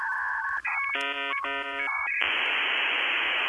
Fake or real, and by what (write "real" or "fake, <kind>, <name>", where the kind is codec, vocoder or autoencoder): fake, vocoder, Vocos